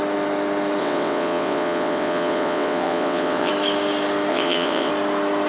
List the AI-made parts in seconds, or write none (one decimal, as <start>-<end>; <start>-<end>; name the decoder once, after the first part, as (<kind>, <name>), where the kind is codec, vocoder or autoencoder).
0.8-3.5 (vocoder, WaveNeXt); 4.3-4.9